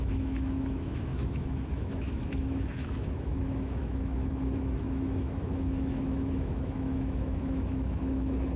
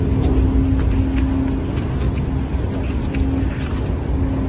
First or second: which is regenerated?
first